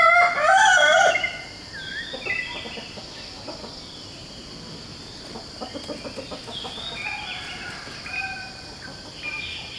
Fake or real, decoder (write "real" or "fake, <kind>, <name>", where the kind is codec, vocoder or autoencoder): real